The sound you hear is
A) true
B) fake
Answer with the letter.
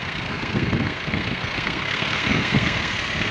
B